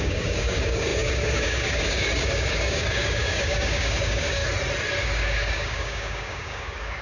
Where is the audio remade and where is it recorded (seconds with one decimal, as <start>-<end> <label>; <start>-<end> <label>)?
0.0-4.4 remade; 4.4-5.0 recorded; 5.0-7.0 remade